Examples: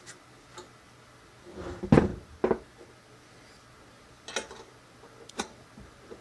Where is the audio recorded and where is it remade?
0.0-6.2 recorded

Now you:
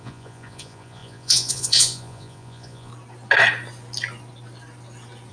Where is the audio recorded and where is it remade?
0.0-2.9 remade; 2.9-5.3 recorded

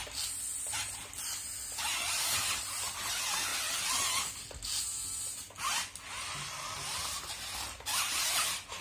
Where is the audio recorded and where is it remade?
0.0-8.8 recorded

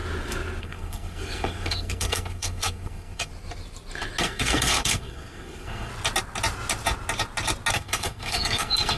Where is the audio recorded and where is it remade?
0.0-0.6 recorded; 0.6-3.3 remade; 3.3-4.2 recorded; 4.2-5.9 remade; 5.9-7.7 recorded; 7.7-9.0 remade

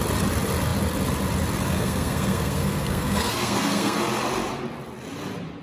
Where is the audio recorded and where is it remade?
0.0-1.7 recorded; 1.7-4.0 remade; 4.0-5.6 recorded

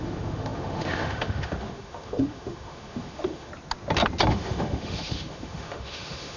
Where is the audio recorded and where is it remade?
0.0-3.5 remade; 3.5-4.3 recorded; 4.3-6.4 remade